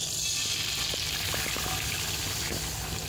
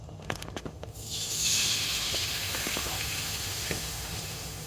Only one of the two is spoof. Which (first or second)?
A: second